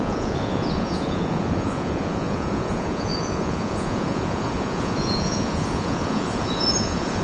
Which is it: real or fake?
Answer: fake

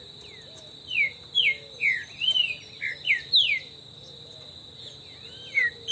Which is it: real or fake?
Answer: real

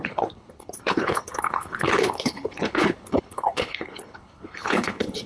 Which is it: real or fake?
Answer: fake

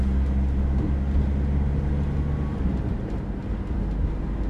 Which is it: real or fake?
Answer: real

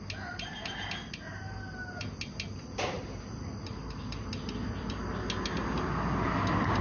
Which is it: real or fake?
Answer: real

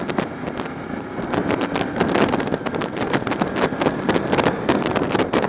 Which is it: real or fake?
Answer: real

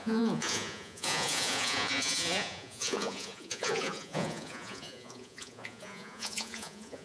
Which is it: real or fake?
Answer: fake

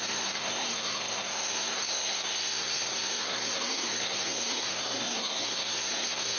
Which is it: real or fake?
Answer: fake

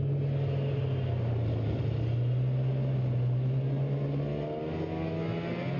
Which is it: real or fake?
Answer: real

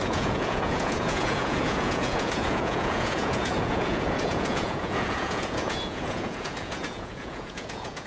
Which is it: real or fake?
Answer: fake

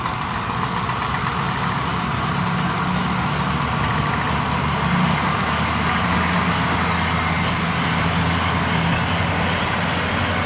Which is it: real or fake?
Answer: real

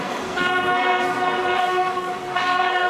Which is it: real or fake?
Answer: fake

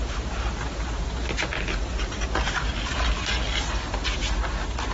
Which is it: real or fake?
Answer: real